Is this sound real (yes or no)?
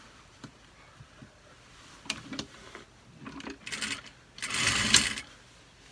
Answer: yes